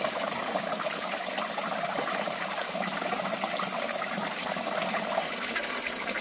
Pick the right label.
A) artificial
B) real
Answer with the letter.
B